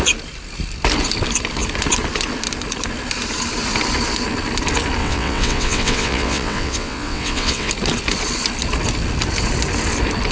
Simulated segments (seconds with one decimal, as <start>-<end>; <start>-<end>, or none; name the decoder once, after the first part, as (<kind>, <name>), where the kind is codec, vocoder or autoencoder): 5.0-7.7 (vocoder, WaveNeXt)